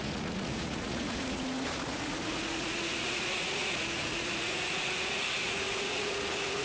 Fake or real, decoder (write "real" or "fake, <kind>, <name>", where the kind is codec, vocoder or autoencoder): fake, vocoder, Vocos